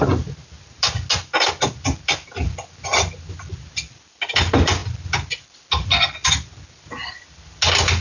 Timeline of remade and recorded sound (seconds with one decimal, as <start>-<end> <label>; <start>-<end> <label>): 0.0-8.0 recorded